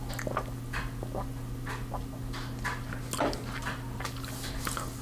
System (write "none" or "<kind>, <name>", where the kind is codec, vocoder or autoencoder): none